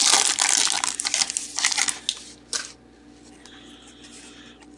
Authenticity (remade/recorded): recorded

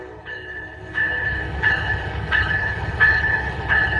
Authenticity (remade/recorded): remade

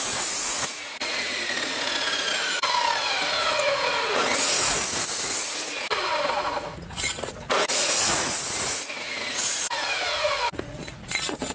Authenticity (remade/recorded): remade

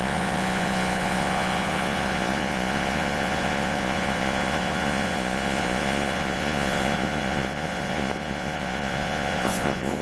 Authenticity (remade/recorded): remade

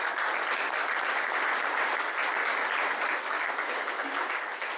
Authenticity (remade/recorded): recorded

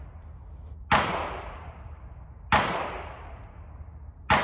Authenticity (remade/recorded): recorded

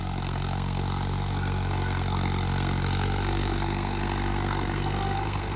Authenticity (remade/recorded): remade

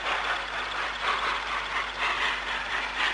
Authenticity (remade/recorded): recorded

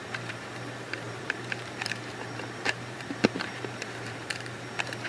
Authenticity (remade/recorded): remade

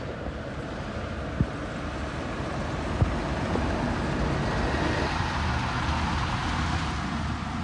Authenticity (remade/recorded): recorded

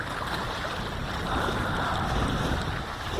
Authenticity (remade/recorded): recorded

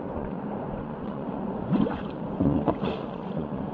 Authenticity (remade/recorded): remade